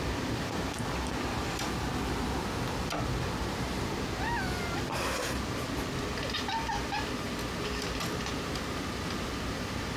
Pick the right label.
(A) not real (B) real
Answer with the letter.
B